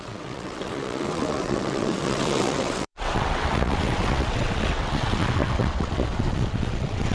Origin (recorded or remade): remade